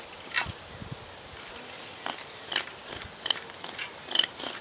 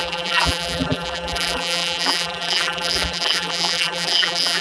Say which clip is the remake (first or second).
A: second